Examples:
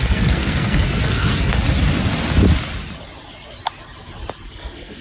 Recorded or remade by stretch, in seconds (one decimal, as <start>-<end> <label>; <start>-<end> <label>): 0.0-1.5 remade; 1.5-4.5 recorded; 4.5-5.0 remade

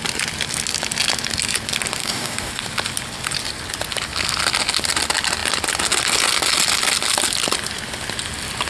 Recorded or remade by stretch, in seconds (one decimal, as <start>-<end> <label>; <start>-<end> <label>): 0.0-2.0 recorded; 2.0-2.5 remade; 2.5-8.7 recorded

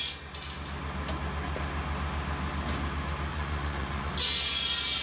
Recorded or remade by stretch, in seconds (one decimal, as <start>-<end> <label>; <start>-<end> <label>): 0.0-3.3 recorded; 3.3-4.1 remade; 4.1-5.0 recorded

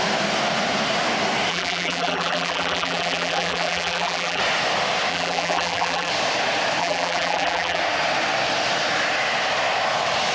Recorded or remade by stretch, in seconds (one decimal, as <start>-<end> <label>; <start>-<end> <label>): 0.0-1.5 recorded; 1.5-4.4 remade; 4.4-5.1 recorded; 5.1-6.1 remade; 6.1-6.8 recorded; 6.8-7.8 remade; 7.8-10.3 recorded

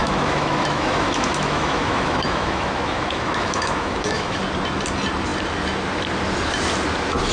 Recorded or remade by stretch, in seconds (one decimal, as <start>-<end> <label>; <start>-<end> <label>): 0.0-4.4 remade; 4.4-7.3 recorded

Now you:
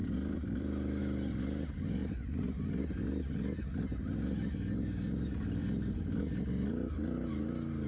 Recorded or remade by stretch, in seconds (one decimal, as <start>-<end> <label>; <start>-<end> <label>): 0.0-1.0 remade; 1.0-5.6 recorded; 5.6-6.2 remade; 6.2-7.9 recorded